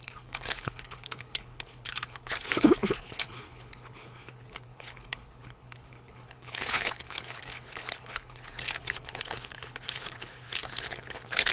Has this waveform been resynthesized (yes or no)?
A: yes